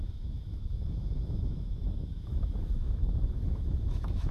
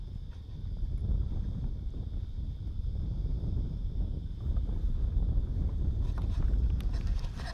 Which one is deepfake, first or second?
first